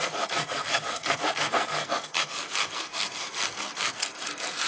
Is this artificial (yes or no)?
yes